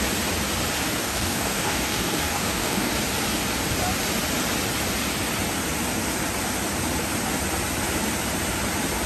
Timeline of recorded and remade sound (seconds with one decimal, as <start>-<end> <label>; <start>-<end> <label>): 0.0-1.0 recorded; 1.0-2.9 remade; 2.9-9.1 recorded